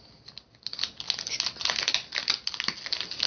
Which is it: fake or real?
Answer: real